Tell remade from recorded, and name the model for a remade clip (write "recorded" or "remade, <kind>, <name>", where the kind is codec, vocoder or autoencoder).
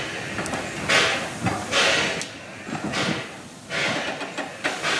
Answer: recorded